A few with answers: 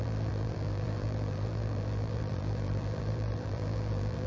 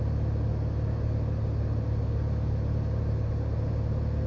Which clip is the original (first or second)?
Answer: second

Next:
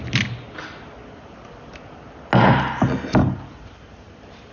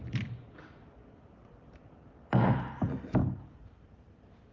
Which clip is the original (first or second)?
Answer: first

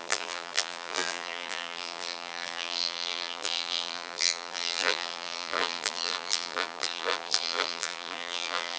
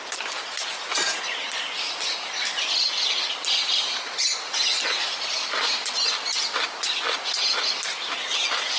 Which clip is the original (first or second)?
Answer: second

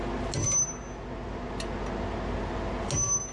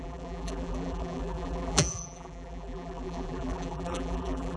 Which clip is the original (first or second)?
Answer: first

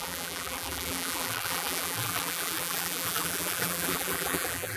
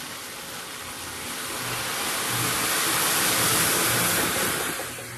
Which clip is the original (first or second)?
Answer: second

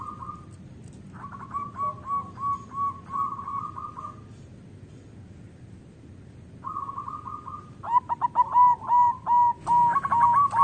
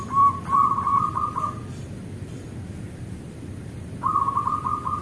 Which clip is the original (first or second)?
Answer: first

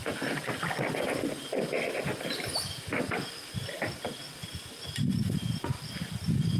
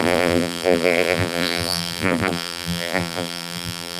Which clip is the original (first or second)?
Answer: first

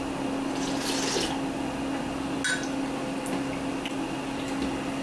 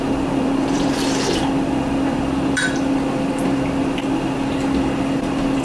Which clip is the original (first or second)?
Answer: first